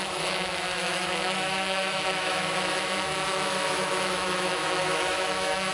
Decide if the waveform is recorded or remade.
remade